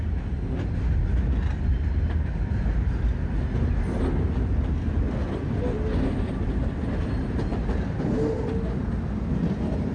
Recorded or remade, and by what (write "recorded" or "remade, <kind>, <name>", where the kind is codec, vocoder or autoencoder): recorded